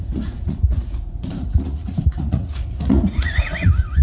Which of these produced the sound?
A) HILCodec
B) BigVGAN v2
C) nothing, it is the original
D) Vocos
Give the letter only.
D